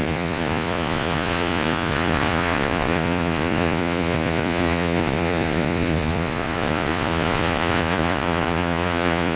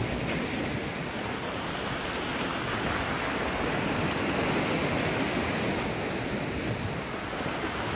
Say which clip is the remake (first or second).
first